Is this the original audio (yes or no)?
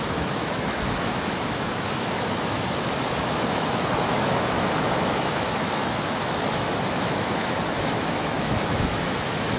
no